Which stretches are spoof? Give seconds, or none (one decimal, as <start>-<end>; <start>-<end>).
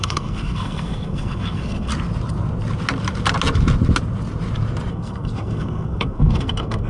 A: 0.0-1.9; 4.9-6.9